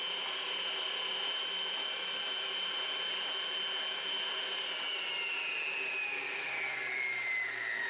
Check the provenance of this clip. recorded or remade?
recorded